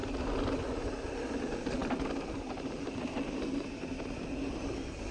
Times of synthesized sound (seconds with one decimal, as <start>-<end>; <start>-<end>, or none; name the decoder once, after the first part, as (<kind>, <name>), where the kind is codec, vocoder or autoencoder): none